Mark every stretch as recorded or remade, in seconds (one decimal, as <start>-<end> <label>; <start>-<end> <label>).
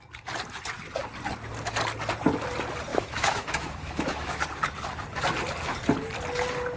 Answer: 0.0-2.9 recorded; 2.9-4.4 remade; 4.4-6.8 recorded